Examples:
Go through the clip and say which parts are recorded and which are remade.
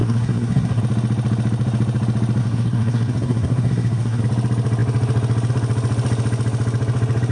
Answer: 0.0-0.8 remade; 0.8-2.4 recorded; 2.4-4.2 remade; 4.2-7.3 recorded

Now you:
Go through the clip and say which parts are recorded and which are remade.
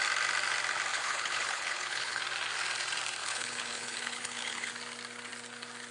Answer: 0.0-0.9 recorded; 0.9-2.2 remade; 2.2-3.2 recorded; 3.2-4.7 remade; 4.7-5.9 recorded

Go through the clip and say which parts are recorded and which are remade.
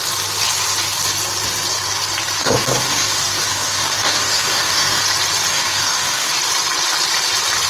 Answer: 0.0-2.4 recorded; 2.4-5.0 remade; 5.0-5.5 recorded; 5.5-6.3 remade; 6.3-7.7 recorded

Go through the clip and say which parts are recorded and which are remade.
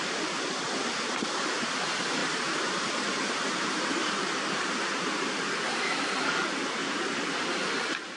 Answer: 0.0-2.2 recorded; 2.2-6.3 remade; 6.3-8.2 recorded